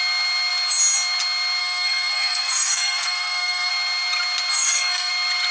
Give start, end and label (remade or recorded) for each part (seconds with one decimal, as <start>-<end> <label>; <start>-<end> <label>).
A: 0.0-1.6 recorded; 1.6-3.7 remade; 3.7-4.5 recorded; 4.5-5.1 remade; 5.1-5.5 recorded

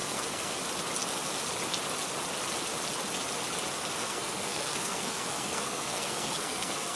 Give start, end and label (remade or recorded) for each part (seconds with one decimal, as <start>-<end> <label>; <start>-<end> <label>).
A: 0.0-0.6 remade; 0.6-4.0 recorded; 4.0-7.0 remade

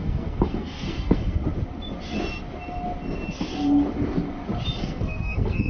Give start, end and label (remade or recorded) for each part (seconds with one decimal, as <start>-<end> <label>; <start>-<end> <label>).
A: 0.0-1.4 remade; 1.4-4.8 recorded; 4.8-5.7 remade

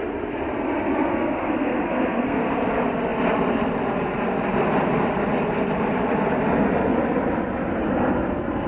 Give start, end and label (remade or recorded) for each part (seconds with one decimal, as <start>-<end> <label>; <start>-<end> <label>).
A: 0.0-1.1 recorded; 1.1-2.5 remade; 2.5-8.7 recorded

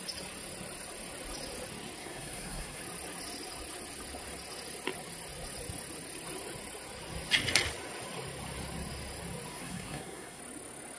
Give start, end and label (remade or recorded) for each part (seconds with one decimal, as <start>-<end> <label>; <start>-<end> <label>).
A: 0.0-2.0 recorded; 2.0-2.8 remade; 2.8-9.5 recorded; 9.5-10.4 remade; 10.4-11.0 recorded